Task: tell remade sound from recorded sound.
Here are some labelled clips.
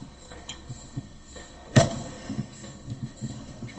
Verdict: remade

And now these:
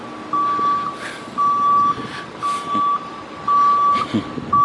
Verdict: recorded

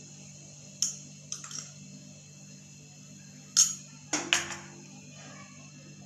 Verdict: recorded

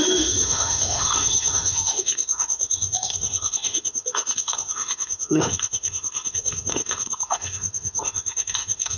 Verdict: remade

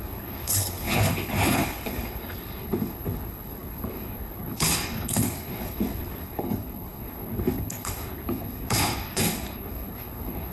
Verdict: remade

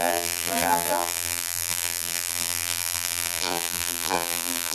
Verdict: remade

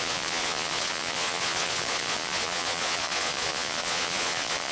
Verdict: remade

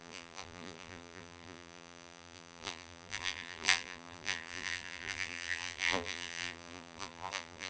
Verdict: remade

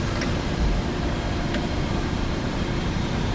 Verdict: remade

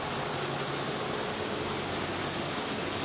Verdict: recorded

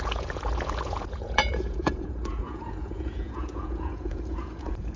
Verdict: remade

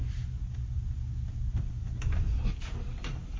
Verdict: recorded